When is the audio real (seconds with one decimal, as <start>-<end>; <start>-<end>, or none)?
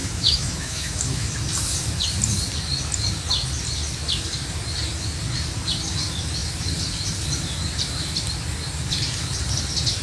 1.3-10.0